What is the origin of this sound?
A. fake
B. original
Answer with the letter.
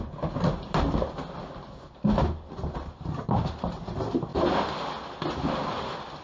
B